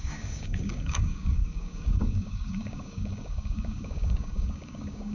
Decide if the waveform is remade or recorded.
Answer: remade